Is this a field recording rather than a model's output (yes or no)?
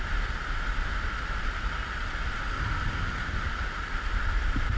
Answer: yes